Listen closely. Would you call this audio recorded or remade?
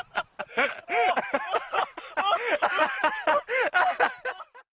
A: recorded